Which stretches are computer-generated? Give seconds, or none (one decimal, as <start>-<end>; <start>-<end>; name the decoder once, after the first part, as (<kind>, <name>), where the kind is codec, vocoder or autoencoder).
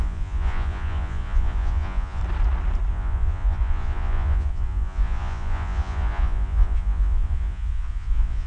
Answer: 0.0-2.2 (vocoder, Vocos); 2.9-8.5